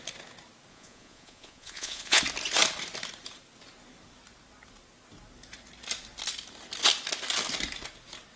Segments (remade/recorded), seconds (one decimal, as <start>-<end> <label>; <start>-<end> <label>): 0.0-0.7 recorded; 0.7-2.2 remade; 2.2-8.4 recorded